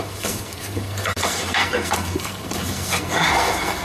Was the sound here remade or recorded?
remade